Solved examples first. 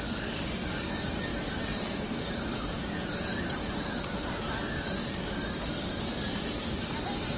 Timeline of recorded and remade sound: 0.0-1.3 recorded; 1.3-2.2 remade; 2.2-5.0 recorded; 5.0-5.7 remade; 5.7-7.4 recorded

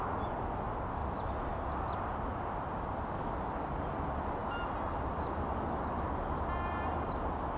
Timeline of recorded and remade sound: 0.0-7.6 recorded

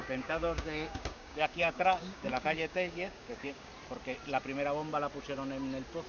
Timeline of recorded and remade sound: 0.0-3.7 remade; 3.7-6.1 recorded

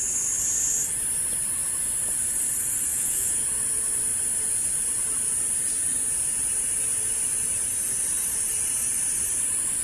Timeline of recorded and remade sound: 0.0-2.9 recorded; 2.9-3.4 remade; 3.4-9.8 recorded

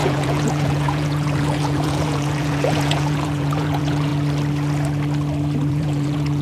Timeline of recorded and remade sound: 0.0-4.1 remade; 4.1-5.7 recorded; 5.7-6.4 remade

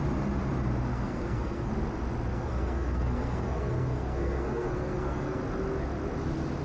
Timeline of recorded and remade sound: 0.0-0.9 recorded; 0.9-1.7 remade; 1.7-2.3 recorded; 2.3-5.4 remade; 5.4-6.6 recorded

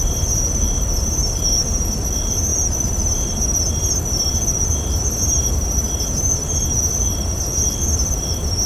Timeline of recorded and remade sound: 0.0-8.7 recorded